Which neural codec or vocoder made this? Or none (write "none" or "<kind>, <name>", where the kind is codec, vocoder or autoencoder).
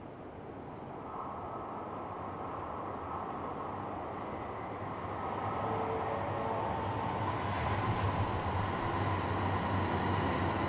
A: none